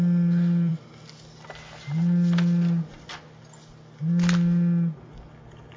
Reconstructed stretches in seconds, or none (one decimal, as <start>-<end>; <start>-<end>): none